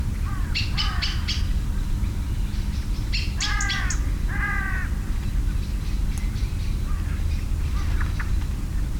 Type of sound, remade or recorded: recorded